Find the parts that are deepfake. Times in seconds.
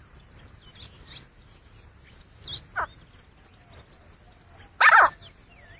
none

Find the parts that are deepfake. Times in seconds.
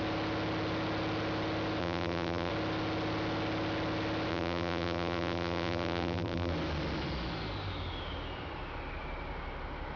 1.8-2.5 (vocoder, BigVGAN v2); 4.3-6.5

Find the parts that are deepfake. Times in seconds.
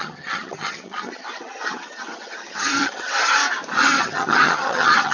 0.0-3.4 (vocoder, HiFi-GAN); 4.0-5.1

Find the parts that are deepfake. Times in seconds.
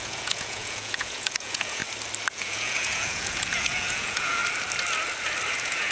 0.0-1.8 (vocoder, Vocos); 2.3-4.4; 5.5-5.9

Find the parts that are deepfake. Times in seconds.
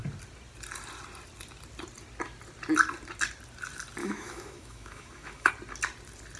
4.0-5.5 (autoencoder, DAC-VAE)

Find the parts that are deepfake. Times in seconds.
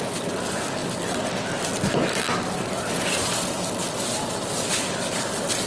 none